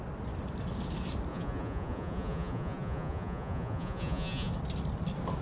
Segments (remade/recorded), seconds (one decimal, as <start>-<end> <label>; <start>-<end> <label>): 0.0-1.3 recorded; 1.3-4.5 remade; 4.5-5.4 recorded